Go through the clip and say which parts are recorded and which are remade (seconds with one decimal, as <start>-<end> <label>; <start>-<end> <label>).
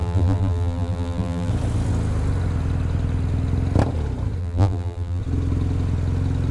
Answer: 0.0-1.5 remade; 1.5-4.4 recorded; 4.4-5.2 remade; 5.2-6.5 recorded